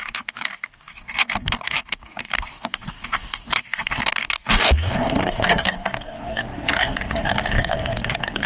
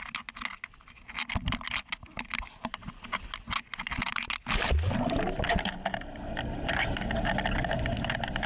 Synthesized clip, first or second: first